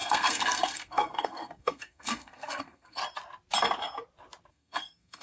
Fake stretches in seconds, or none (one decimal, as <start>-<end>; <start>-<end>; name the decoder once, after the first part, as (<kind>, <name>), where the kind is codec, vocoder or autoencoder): 0.0-3.0 (codec, SNAC); 4.5-5.2